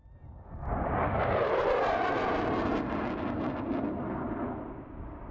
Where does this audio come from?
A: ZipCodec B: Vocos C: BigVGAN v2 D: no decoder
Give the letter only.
D